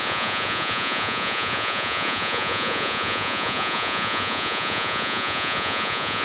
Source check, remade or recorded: remade